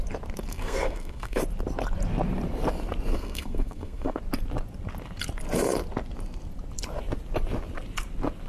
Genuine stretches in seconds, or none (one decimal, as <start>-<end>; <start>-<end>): 0.0-0.5; 1.4-3.1; 4.2-8.5